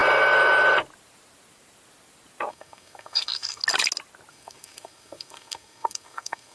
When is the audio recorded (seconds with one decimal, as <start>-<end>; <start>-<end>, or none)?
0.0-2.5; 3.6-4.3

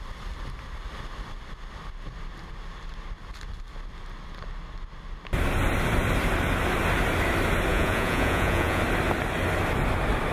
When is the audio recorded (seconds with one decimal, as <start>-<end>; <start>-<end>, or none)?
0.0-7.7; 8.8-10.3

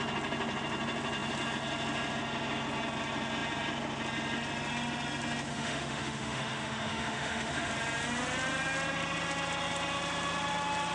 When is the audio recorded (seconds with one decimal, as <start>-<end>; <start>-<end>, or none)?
0.0-5.5; 7.7-10.9